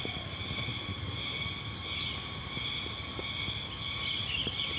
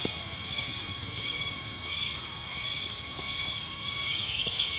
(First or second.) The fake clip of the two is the second